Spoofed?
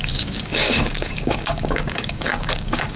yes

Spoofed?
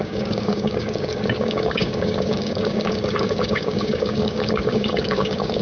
yes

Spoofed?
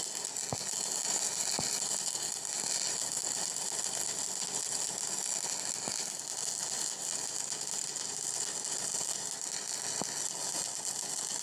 no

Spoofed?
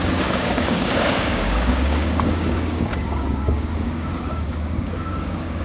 yes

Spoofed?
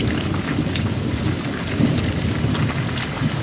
yes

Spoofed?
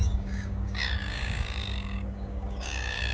yes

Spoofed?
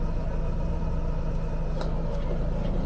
no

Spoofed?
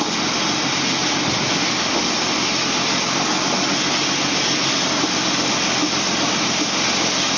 no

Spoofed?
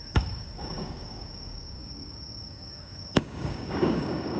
yes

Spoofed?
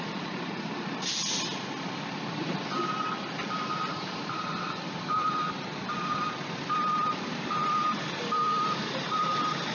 no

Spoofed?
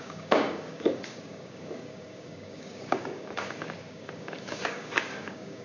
yes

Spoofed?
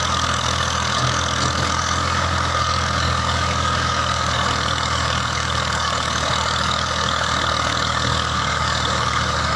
yes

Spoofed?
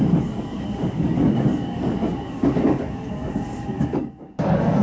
yes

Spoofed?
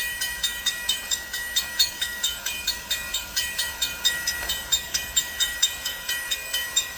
yes